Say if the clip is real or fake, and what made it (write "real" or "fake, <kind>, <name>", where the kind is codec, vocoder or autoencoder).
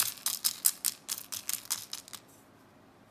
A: real